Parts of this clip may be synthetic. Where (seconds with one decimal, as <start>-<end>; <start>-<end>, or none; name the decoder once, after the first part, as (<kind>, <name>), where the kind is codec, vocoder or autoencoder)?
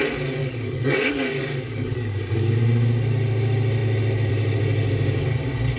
0.4-2.6 (codec, DAC)